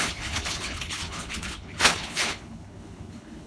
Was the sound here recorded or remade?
remade